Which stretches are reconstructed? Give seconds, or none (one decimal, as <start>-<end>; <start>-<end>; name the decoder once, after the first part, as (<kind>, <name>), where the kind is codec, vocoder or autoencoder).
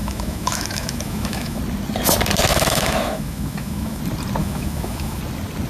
0.0-1.6 (autoencoder, DAC-VAE); 2.5-4.0; 4.4-5.2